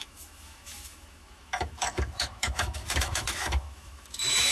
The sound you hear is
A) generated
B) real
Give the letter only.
A